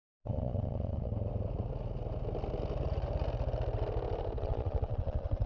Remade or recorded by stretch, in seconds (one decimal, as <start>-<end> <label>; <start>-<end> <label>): 0.0-1.1 remade; 1.1-4.4 recorded; 4.4-5.5 remade